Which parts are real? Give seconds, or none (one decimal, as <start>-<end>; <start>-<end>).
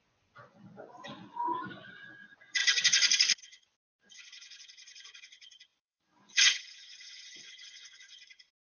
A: 2.6-3.4